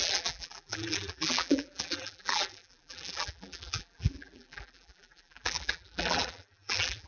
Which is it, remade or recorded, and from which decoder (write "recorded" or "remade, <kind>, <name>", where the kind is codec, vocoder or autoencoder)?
remade, vocoder, BigVGAN v2